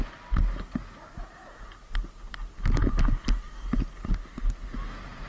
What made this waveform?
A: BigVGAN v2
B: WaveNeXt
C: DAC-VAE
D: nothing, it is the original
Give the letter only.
D